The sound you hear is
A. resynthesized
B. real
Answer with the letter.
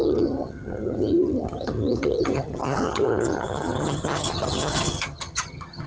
A